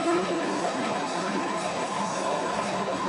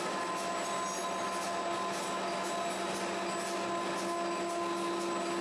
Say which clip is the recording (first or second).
second